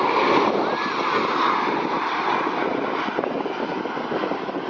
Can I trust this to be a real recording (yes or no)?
yes